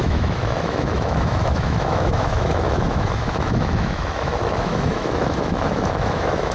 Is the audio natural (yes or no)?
no